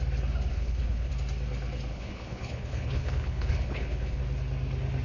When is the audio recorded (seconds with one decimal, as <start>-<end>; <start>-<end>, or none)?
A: 0.0-0.5; 1.1-1.9; 4.2-5.0